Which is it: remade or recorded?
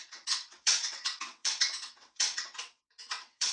remade